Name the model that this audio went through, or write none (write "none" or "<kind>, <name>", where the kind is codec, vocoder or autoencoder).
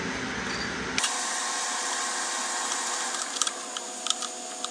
none